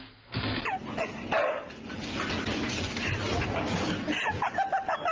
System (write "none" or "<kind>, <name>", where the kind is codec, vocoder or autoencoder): none